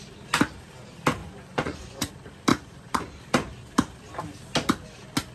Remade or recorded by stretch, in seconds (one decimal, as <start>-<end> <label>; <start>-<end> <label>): 0.0-1.2 recorded; 1.2-2.1 remade; 2.1-2.5 recorded; 2.5-3.2 remade; 3.2-5.3 recorded